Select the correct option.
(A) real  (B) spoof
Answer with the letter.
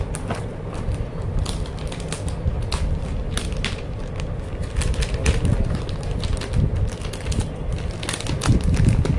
A